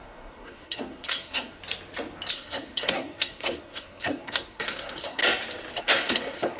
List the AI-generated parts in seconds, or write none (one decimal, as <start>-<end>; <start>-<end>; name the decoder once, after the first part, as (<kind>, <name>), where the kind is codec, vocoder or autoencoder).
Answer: 0.0-1.6 (codec, SNAC); 2.3-5.2; 5.8-6.6

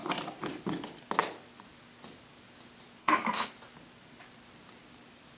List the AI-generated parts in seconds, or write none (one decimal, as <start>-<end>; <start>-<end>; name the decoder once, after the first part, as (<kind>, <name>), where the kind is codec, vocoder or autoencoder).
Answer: 3.0-3.5 (codec, SNAC)

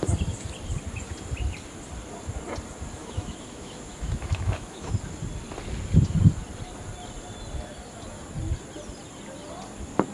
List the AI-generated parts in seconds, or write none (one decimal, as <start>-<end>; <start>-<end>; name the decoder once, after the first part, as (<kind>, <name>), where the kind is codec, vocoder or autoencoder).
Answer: 3.0-5.0 (autoencoder, DAC-VAE)

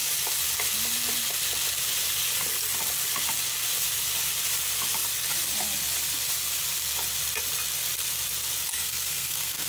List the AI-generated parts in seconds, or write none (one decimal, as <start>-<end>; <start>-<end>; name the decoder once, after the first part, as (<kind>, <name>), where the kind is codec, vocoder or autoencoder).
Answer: 8.7-9.7 (codec, SNAC)

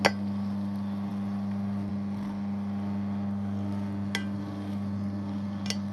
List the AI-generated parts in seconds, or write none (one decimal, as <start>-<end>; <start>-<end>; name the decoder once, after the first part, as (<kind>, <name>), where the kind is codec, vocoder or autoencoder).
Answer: none